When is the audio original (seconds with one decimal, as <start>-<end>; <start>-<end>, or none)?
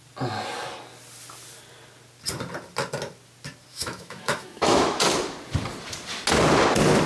0.0-3.7; 5.0-7.1